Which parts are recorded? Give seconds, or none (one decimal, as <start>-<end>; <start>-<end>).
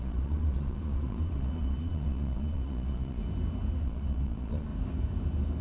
3.2-3.8; 4.7-5.6